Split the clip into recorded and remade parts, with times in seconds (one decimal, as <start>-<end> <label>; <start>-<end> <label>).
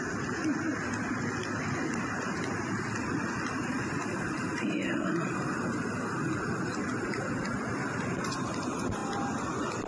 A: 0.0-9.9 recorded